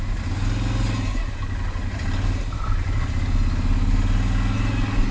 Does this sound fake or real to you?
real